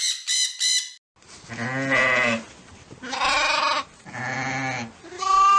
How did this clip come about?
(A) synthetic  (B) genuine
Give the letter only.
B